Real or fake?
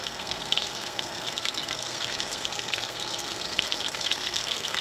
fake